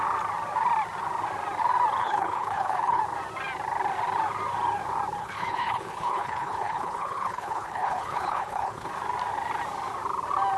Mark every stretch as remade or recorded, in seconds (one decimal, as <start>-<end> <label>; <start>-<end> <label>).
0.0-2.0 recorded; 2.0-3.0 remade; 3.0-5.2 recorded; 5.2-8.9 remade; 8.9-10.6 recorded